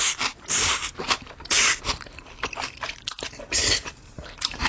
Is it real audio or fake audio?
fake